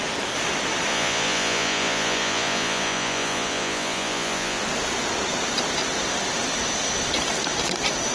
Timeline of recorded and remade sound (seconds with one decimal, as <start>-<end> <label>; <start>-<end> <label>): 0.0-0.9 recorded; 0.9-4.6 remade; 4.6-8.1 recorded